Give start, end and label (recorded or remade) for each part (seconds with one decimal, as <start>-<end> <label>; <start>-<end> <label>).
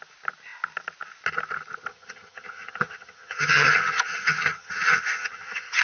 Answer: 0.0-1.9 recorded; 1.9-5.8 remade